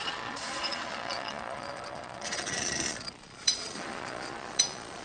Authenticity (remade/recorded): remade